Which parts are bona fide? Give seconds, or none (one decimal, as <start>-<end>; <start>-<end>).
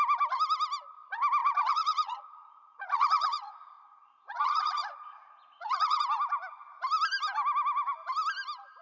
0.0-1.4; 6.0-8.8